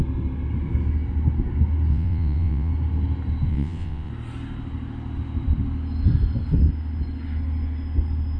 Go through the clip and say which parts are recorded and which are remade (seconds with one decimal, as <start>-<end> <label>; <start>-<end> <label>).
0.0-1.9 recorded; 1.9-2.7 remade; 2.7-3.5 recorded; 3.5-4.1 remade; 4.1-8.4 recorded